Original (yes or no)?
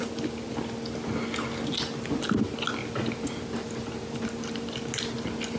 yes